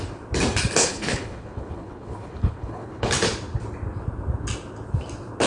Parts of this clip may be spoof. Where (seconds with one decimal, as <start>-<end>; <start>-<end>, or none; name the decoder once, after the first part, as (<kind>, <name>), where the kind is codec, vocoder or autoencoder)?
0.8-3.1 (codec, HILCodec)